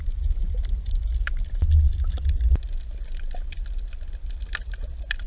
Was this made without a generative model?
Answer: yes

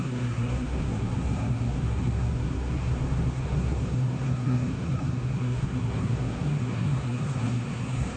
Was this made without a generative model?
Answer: no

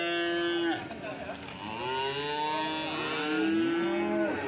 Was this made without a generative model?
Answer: yes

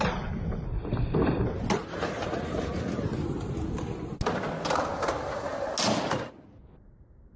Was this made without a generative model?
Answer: yes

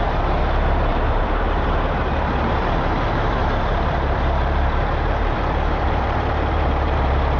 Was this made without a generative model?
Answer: no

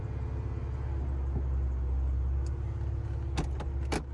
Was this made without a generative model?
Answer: yes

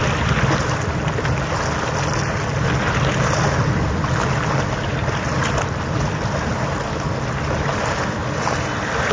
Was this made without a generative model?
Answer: yes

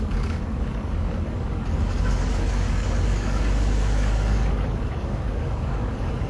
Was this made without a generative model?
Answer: no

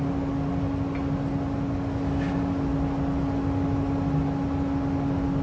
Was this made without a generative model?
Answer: yes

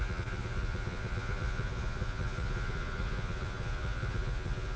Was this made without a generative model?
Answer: no